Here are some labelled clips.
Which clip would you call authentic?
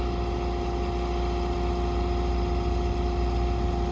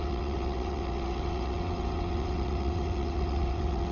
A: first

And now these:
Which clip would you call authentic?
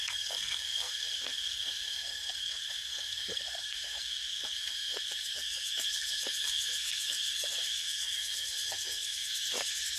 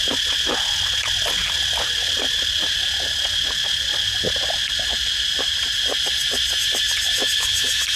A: second